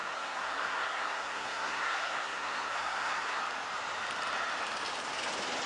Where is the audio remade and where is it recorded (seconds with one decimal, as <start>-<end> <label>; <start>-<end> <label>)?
0.0-3.4 remade; 3.4-5.7 recorded

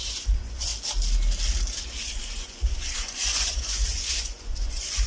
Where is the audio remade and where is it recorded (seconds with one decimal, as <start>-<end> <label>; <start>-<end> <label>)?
0.0-0.7 remade; 0.7-1.8 recorded; 1.8-5.1 remade